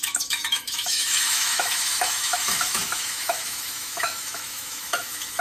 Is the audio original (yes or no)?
no